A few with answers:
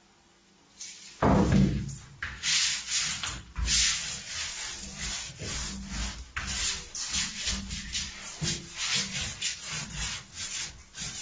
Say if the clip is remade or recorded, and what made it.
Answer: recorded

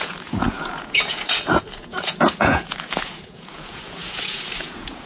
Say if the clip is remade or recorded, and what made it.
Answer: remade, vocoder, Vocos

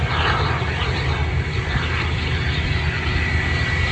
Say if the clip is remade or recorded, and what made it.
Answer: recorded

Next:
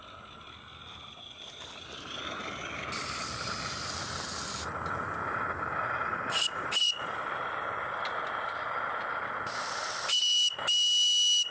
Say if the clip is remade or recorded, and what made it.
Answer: recorded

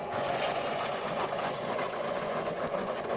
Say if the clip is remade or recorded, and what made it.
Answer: remade, vocoder, Vocos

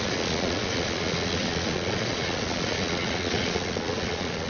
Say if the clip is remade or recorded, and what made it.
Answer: remade, vocoder, Vocos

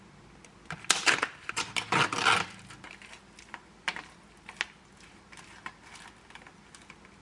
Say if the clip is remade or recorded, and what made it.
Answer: recorded